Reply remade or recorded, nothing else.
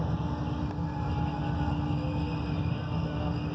recorded